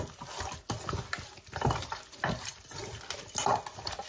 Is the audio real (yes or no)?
yes